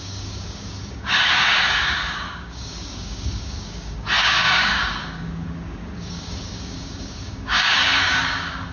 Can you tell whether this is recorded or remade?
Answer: remade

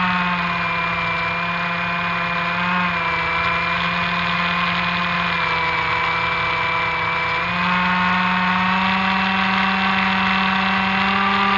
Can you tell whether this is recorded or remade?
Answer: recorded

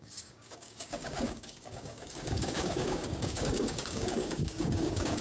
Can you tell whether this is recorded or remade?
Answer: remade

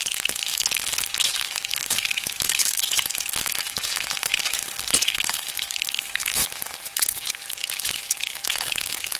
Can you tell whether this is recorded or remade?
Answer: remade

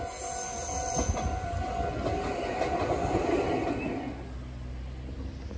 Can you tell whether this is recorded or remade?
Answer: recorded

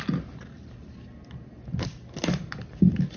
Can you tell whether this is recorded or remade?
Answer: recorded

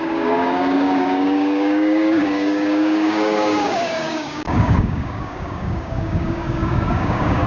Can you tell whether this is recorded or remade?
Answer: remade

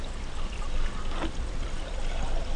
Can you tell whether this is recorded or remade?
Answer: recorded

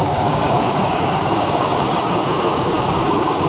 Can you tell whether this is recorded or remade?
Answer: remade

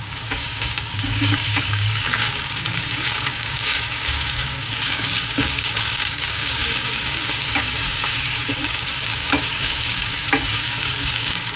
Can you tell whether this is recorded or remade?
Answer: remade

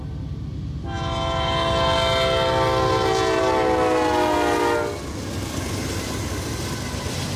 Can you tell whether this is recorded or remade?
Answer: recorded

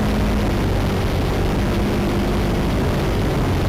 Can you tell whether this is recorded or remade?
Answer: recorded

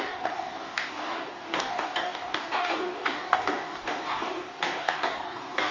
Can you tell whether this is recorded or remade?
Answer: remade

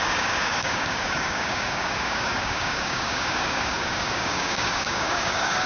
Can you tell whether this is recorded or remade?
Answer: remade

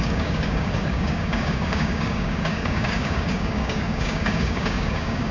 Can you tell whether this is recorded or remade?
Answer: remade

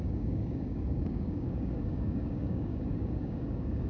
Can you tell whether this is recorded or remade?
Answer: remade